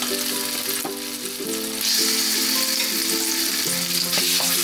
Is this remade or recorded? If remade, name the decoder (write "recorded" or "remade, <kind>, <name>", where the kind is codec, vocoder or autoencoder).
recorded